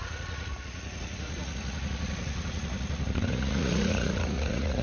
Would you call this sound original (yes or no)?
no